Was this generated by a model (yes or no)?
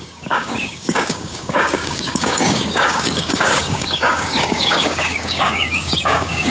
yes